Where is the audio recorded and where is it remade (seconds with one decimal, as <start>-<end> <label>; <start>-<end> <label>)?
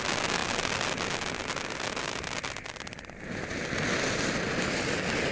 0.0-5.3 recorded